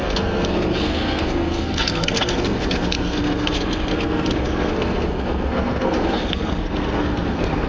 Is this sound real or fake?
fake